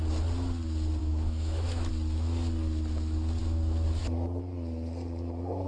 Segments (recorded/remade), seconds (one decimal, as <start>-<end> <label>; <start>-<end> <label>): 0.0-1.0 recorded; 1.0-1.9 remade; 1.9-5.7 recorded